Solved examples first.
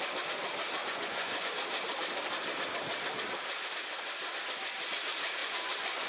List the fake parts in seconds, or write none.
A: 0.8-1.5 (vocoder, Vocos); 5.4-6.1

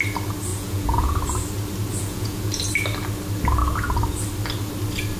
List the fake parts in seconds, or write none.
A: 0.5-1.2 (vocoder, Vocos); 1.9-2.6

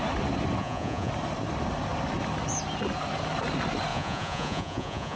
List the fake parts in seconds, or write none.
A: 0.6-1.1 (vocoder, Vocos); 3.9-5.2